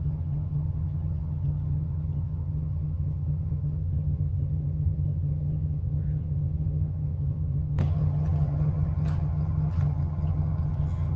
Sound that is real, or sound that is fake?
fake